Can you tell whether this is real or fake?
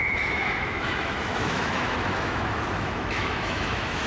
fake